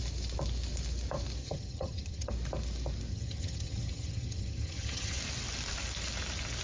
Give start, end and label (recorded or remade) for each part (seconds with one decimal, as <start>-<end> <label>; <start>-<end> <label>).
0.0-1.4 recorded; 1.4-2.3 remade; 2.3-3.1 recorded; 3.1-5.2 remade; 5.2-6.6 recorded